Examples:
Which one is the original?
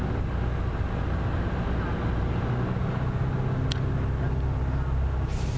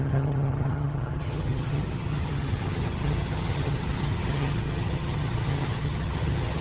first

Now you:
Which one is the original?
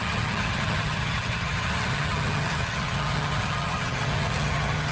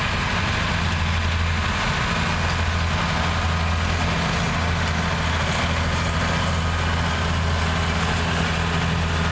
second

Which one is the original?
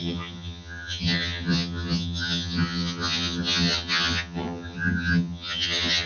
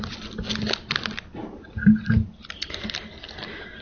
second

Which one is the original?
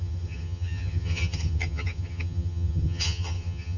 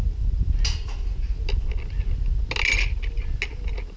second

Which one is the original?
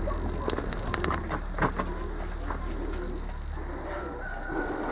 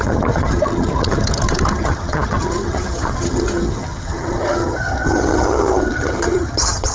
first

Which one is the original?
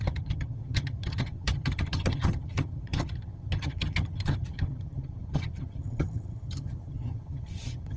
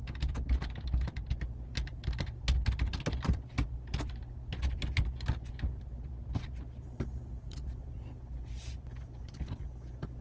second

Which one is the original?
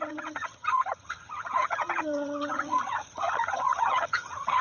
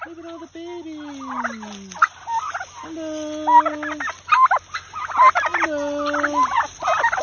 second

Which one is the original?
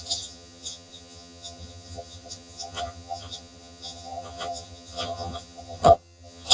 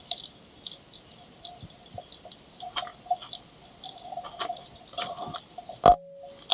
second